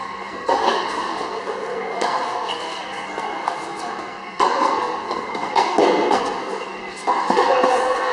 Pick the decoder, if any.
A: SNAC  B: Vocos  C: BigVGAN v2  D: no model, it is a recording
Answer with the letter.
A